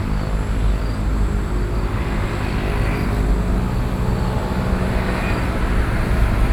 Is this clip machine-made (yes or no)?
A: no